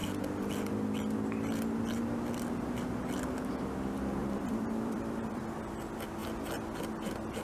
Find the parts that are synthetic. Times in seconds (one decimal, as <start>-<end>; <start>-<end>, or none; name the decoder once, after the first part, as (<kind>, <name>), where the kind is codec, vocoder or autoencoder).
4.2-5.4 (vocoder, BigVGAN v2)